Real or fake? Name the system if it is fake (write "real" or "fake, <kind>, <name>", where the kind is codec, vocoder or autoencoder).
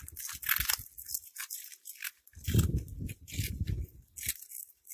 real